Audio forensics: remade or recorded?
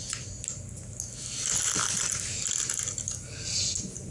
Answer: recorded